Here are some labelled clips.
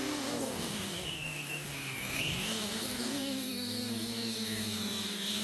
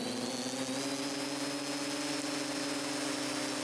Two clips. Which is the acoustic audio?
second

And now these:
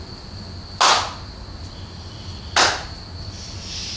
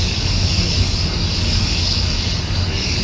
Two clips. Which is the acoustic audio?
first